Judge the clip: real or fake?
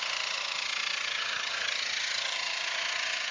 fake